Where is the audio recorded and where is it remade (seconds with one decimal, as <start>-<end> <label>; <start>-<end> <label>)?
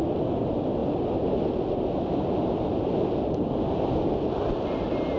0.0-5.2 recorded